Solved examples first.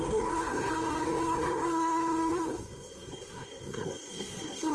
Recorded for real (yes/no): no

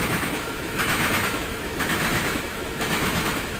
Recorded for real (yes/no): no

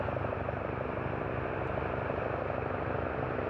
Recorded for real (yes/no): yes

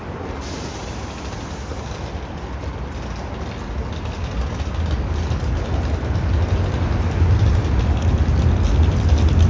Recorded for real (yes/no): yes